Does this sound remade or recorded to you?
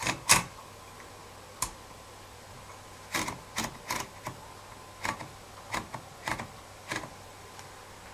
recorded